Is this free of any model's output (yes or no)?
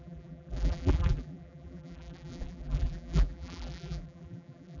no